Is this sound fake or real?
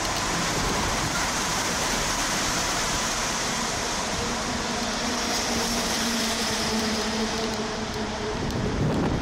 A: fake